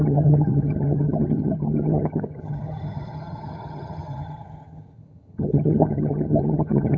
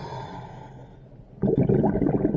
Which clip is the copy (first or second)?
first